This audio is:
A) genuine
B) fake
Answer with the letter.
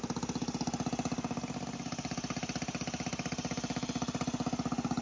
A